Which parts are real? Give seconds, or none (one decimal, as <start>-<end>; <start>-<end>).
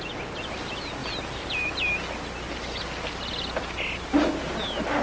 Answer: 0.0-5.0